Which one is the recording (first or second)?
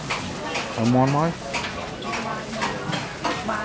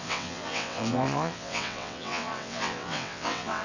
first